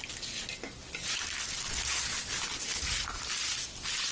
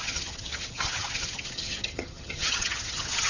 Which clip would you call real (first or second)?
first